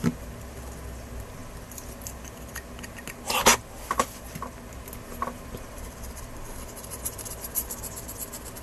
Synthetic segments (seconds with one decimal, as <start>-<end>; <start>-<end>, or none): 3.5-4.7; 5.2-6.4